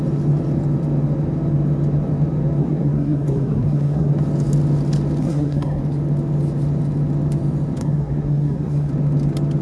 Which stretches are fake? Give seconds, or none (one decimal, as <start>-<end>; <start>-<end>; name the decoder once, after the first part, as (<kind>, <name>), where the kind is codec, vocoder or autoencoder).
2.6-4.1 (codec, SNAC); 5.2-5.8; 7.8-8.9